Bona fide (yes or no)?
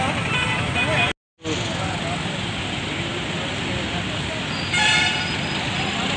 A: yes